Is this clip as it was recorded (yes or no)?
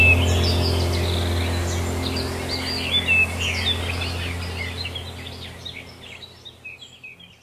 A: yes